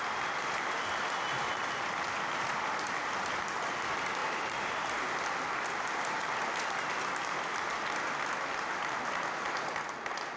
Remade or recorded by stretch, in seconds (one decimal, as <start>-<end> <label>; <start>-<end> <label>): 0.0-4.2 recorded; 4.2-5.1 remade; 5.1-10.4 recorded